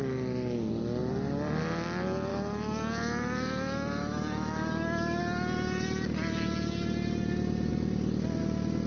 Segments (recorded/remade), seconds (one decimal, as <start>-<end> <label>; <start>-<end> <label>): 0.0-2.3 recorded; 2.3-5.2 remade; 5.2-8.9 recorded